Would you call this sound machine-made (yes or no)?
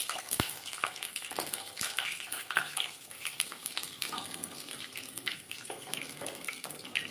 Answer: yes